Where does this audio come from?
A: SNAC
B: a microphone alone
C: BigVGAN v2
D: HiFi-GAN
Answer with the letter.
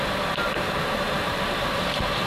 C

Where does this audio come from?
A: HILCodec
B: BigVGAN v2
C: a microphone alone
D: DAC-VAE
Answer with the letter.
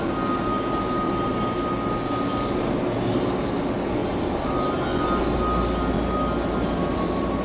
C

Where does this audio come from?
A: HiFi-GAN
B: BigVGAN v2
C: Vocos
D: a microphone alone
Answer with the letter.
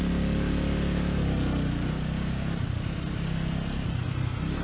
D